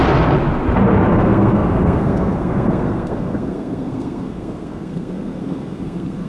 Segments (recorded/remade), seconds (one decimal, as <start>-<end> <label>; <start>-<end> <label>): 0.0-1.1 recorded; 1.1-6.3 remade